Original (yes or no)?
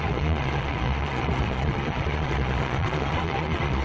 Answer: no